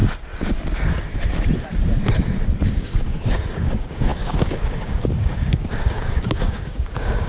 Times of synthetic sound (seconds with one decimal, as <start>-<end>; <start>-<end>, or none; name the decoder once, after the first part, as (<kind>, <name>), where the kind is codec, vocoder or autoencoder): 2.7-7.3 (codec, DAC)

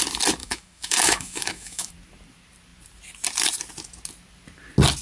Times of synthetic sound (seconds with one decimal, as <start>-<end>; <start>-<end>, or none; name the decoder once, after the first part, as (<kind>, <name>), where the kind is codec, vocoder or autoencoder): 0.4-1.9 (autoencoder, DAC-VAE)

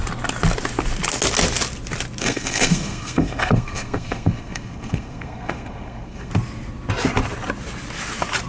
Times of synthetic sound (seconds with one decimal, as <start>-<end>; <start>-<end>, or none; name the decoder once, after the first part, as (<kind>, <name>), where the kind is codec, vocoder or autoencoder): 2.2-6.3 (codec, SNAC)

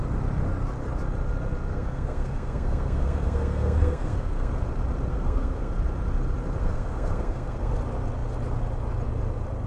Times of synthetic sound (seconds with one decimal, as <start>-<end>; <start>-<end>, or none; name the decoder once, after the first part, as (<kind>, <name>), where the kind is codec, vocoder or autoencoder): 1.7-4.5 (codec, SNAC); 5.1-5.7; 6.6-7.7

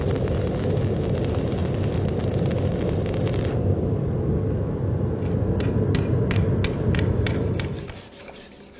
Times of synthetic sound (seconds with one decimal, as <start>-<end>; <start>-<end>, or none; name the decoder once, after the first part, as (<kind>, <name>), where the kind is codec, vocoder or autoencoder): none

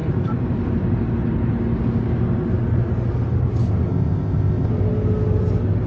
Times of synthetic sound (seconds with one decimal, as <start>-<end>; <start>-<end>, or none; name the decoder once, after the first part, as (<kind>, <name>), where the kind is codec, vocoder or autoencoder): 3.9-4.7 (codec, ZipCodec)

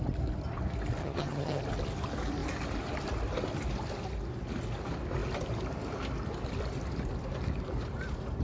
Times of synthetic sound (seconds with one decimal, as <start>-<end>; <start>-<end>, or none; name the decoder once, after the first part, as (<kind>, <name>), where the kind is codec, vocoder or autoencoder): 1.0-1.6 (vocoder, HiFi-GAN)

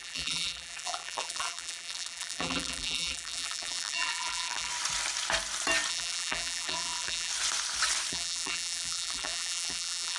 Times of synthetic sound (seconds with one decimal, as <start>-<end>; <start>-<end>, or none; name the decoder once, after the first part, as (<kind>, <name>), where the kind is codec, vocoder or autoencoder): 0.0-4.7 (vocoder, BigVGAN v2); 5.9-7.3; 8.1-10.2